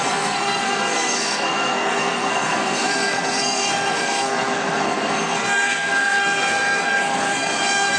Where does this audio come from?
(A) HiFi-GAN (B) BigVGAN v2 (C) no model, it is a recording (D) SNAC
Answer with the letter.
D